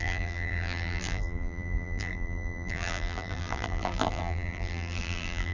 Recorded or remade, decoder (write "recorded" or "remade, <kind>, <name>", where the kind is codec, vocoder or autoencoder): remade, vocoder, BigVGAN v2